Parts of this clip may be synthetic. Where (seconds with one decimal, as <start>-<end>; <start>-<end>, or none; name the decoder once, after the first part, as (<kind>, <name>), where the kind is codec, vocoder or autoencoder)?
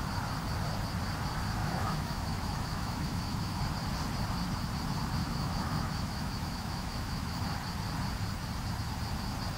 1.6-3.6 (autoencoder, DAC-VAE); 5.2-7.4